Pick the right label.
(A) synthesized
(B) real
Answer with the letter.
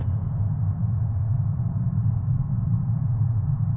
A